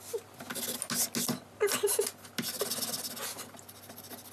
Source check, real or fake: real